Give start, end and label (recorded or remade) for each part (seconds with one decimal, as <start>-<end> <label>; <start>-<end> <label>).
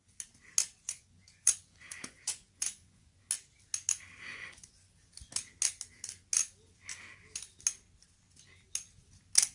0.0-0.8 recorded; 0.8-3.2 remade; 3.2-4.3 recorded; 4.3-4.9 remade; 4.9-9.5 recorded